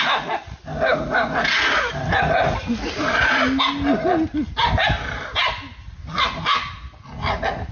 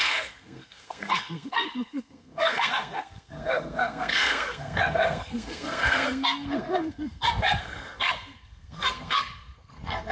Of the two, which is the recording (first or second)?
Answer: first